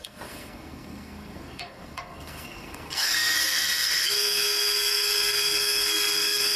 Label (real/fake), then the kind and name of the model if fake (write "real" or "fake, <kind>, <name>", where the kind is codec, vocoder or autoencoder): fake, codec, SNAC